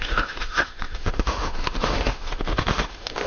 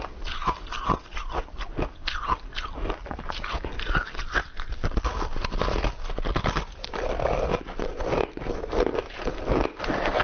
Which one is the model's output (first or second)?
first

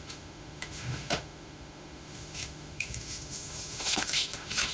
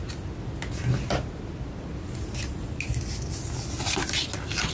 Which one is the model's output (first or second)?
first